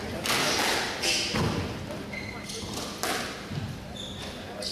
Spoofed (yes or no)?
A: no